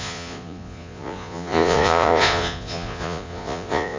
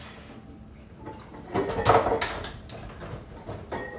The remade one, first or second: first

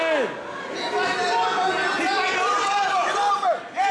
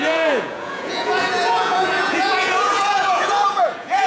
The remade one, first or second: second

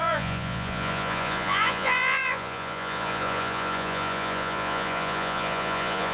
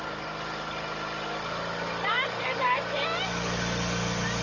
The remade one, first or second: first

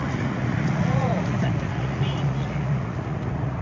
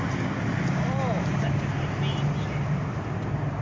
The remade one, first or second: first